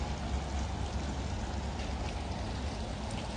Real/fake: real